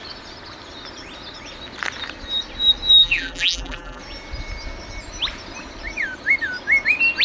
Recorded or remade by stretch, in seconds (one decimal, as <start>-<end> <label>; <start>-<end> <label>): 0.0-3.0 recorded; 3.0-4.0 remade; 4.0-7.2 recorded